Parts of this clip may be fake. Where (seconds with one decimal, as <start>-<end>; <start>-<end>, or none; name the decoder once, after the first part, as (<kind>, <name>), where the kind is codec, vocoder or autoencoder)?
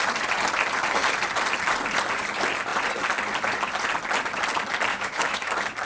4.9-5.5 (autoencoder, DAC-VAE)